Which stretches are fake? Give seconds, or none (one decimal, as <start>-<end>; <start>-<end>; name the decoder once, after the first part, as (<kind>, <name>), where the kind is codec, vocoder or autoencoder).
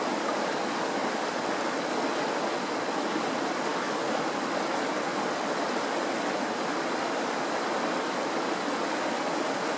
none